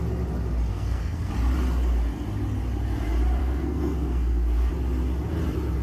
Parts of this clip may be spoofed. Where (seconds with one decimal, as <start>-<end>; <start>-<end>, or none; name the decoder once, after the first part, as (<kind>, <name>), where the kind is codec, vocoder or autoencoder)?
0.7-1.3 (codec, SNAC); 3.4-4.7